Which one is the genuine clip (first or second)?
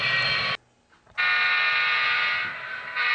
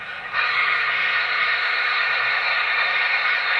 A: first